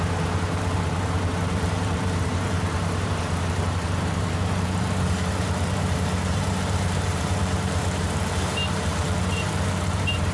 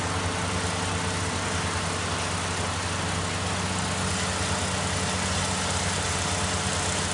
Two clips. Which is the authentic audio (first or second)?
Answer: second